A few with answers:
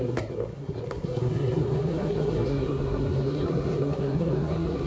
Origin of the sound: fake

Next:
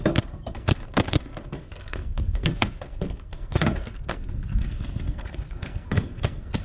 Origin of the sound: fake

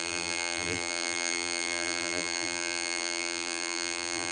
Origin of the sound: fake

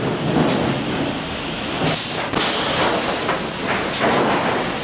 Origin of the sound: real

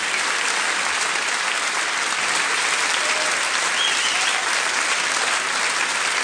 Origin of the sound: real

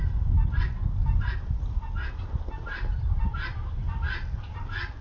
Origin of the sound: real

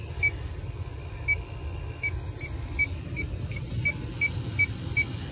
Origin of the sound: real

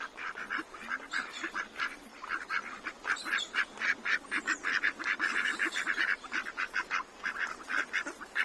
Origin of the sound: real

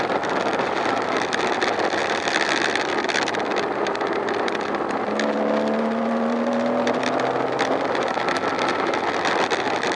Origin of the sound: fake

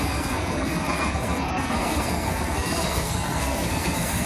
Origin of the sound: fake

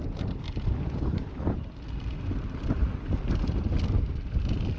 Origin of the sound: real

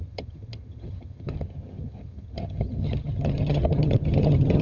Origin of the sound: fake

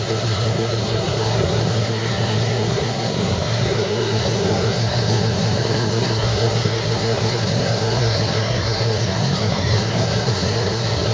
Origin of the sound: fake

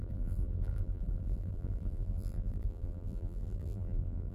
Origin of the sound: fake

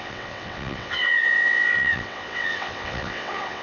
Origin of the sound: fake